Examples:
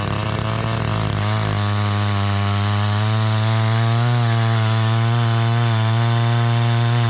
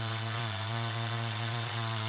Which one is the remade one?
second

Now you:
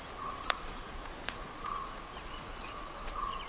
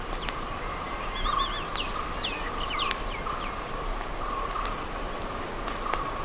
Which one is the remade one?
first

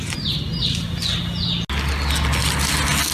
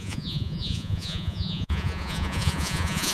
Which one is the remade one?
second